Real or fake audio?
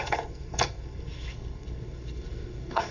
fake